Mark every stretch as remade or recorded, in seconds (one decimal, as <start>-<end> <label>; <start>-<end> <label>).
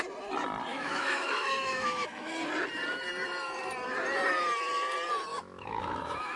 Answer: 0.0-0.7 recorded; 0.7-2.3 remade; 2.3-5.3 recorded; 5.3-6.4 remade